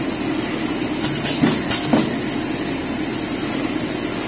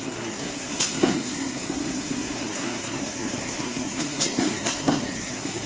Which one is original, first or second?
first